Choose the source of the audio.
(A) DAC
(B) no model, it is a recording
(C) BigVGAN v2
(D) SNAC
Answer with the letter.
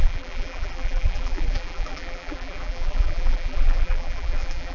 C